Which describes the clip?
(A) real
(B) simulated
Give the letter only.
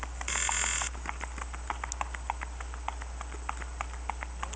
A